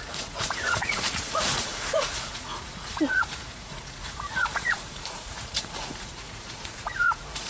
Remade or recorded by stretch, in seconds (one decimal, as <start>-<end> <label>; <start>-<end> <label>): 0.0-7.5 remade

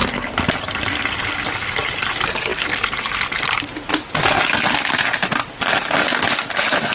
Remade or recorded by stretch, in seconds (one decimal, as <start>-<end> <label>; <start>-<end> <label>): 0.0-6.9 recorded

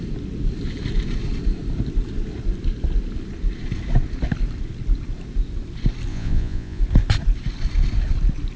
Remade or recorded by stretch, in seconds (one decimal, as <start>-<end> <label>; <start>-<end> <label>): 0.0-6.1 recorded; 6.1-6.8 remade; 6.8-8.6 recorded

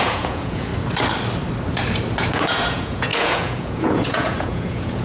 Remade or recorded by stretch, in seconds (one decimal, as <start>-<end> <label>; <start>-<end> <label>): 0.0-0.7 remade; 0.7-2.2 recorded; 2.2-5.0 remade

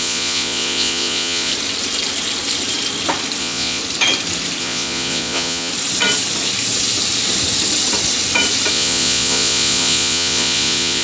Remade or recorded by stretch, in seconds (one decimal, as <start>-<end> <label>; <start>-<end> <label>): 0.0-1.5 remade; 1.5-3.4 recorded; 3.4-3.8 remade; 3.8-4.6 recorded; 4.6-5.7 remade; 5.7-8.7 recorded; 8.7-11.0 remade

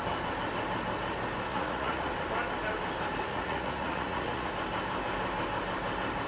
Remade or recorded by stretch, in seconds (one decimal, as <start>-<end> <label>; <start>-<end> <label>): 0.0-1.5 recorded; 1.5-2.1 remade; 2.1-3.3 recorded; 3.3-4.5 remade; 4.5-6.3 recorded

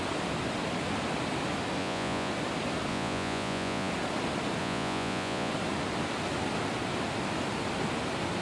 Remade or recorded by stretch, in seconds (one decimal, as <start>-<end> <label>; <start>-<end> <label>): 0.0-1.8 recorded; 1.8-2.3 remade; 2.3-2.9 recorded; 2.9-3.9 remade; 3.9-4.6 recorded; 4.6-5.5 remade; 5.5-8.4 recorded